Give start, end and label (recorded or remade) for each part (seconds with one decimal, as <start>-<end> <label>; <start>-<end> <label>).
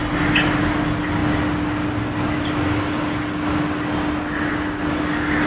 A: 0.0-5.5 recorded